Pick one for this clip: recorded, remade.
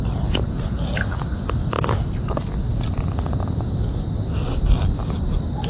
recorded